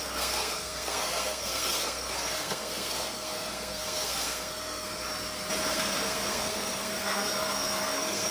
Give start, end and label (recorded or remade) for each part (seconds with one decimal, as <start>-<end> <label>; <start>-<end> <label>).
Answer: 0.0-5.0 remade; 5.0-5.7 recorded; 5.7-8.3 remade